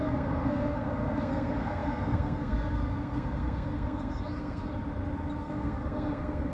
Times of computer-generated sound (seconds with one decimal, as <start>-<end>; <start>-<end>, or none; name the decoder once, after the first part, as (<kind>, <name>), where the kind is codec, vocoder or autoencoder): 0.0-4.7 (codec, SNAC); 5.4-6.5